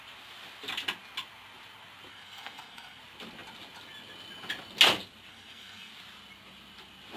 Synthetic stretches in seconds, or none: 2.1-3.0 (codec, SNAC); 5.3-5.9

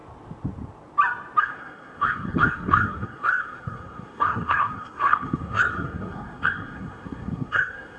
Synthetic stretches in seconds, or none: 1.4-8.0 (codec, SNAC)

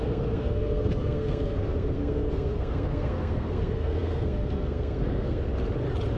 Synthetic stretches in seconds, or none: 0.0-5.5 (codec, SNAC)

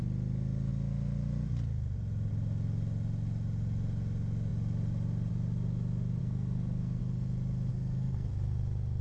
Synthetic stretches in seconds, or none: 6.2-7.0 (codec, SNAC); 7.7-8.3

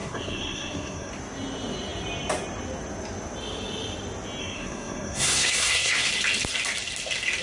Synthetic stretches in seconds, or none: 0.0-1.1 (codec, SNAC); 4.4-6.1

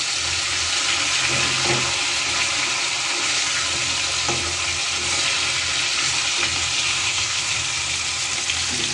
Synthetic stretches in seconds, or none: 6.9-7.6 (codec, SNAC)

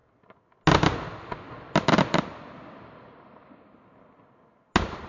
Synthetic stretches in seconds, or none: none